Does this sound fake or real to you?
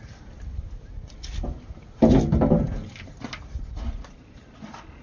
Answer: real